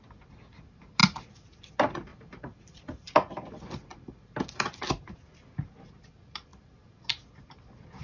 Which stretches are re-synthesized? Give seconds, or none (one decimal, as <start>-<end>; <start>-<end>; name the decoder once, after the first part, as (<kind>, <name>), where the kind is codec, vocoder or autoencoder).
2.1-3.1 (vocoder, BigVGAN v2)